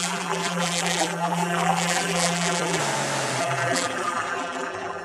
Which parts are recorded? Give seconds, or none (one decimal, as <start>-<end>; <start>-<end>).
2.8-3.4

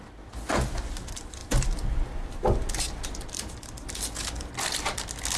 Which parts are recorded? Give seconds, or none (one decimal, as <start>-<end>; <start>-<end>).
0.0-1.4; 4.0-5.4

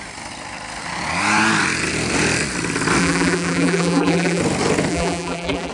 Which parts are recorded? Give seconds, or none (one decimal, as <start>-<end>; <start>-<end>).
0.0-3.0; 4.4-4.9

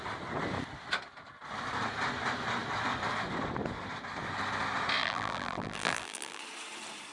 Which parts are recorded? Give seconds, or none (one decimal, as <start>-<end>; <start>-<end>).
0.0-5.0; 6.4-7.1

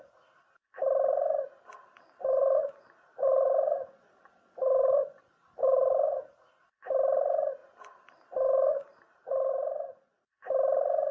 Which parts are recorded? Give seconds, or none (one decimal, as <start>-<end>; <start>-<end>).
7.6-9.2

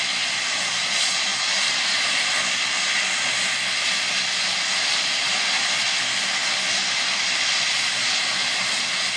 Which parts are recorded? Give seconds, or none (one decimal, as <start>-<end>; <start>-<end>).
0.0-1.3; 2.3-9.2

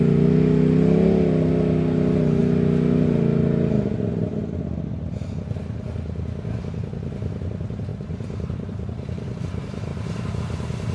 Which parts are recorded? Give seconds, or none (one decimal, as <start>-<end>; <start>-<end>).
0.0-7.9; 9.4-9.9; 10.4-10.9